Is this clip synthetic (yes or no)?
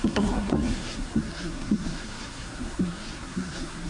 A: yes